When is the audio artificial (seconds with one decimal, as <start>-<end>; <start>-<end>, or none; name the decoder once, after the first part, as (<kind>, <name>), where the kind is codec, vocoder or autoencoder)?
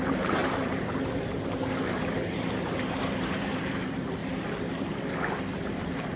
0.0-4.2 (vocoder, BigVGAN v2); 5.5-6.2